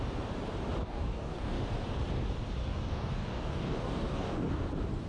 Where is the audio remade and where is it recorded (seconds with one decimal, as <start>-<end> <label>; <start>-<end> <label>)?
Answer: 0.0-0.8 recorded; 0.8-1.6 remade; 1.6-2.6 recorded; 2.6-4.5 remade; 4.5-5.1 recorded